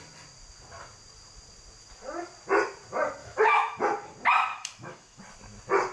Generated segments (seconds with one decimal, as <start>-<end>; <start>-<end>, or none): 3.2-3.8; 4.5-5.2